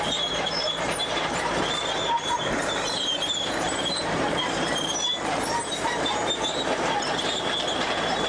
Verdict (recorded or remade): remade